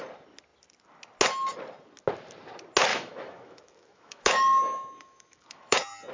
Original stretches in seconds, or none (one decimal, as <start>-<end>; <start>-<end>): 0.0-2.9